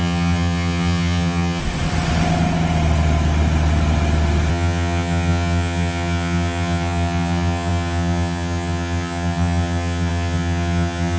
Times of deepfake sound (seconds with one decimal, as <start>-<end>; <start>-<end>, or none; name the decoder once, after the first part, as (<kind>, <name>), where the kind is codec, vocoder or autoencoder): 0.0-1.6 (vocoder, HiFi-GAN); 4.5-11.2